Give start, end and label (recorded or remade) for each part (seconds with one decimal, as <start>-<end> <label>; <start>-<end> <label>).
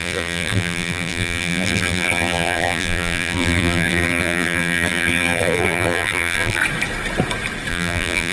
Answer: 0.0-6.6 remade; 6.6-7.7 recorded; 7.7-8.3 remade